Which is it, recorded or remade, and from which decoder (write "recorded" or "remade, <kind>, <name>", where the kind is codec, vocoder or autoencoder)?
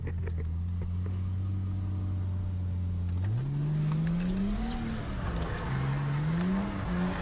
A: recorded